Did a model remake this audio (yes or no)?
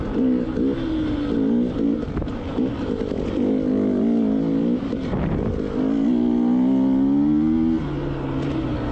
no